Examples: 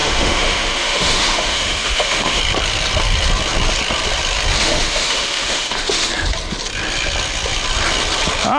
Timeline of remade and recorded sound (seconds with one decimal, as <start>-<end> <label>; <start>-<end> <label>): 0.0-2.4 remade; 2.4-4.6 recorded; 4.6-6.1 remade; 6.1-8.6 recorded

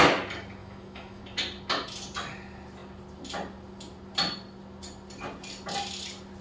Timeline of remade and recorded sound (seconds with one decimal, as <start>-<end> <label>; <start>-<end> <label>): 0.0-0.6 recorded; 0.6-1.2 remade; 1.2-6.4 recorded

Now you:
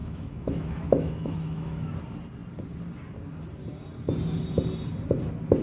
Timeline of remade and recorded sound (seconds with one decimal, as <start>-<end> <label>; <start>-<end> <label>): 0.0-1.9 remade; 1.9-5.6 recorded

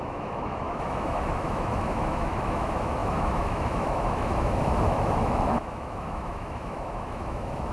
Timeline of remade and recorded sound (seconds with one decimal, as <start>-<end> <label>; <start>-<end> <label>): 0.0-7.7 remade

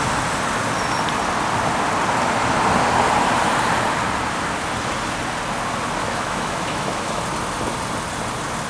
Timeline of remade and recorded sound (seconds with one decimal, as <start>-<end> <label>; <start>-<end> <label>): 0.0-6.0 recorded; 6.0-7.2 remade; 7.2-8.7 recorded

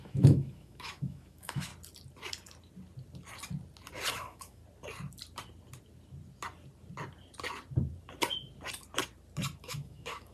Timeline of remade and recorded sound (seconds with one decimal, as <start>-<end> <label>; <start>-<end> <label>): 0.0-1.7 remade; 1.7-4.1 recorded; 4.1-4.6 remade; 4.6-9.6 recorded; 9.6-10.3 remade

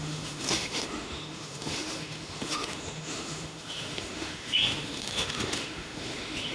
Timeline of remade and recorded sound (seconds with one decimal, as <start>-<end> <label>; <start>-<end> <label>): 0.0-6.5 remade

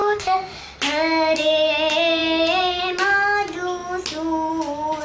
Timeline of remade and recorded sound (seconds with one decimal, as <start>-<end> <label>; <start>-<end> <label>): 0.0-0.6 remade; 0.6-5.0 recorded